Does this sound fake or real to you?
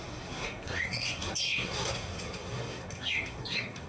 fake